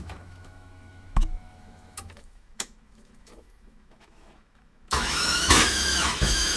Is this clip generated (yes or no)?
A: yes